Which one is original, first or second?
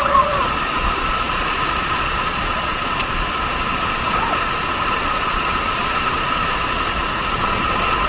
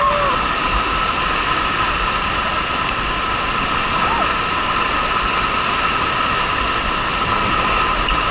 second